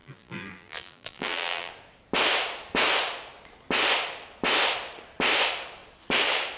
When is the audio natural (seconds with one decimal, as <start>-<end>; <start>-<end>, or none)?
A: 1.7-6.6